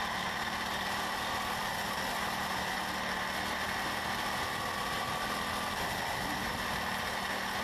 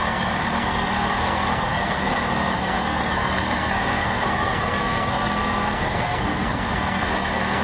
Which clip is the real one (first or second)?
first